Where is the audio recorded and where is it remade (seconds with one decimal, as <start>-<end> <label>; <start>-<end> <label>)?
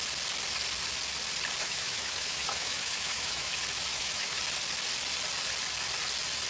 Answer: 0.0-1.6 recorded; 1.6-3.5 remade; 3.5-3.9 recorded; 3.9-4.4 remade; 4.4-6.5 recorded